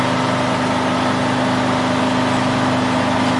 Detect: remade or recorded recorded